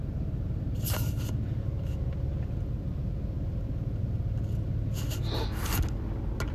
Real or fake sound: real